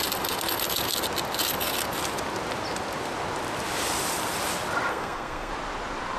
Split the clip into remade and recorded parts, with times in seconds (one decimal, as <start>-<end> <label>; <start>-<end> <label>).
0.0-4.9 recorded; 4.9-5.5 remade; 5.5-6.2 recorded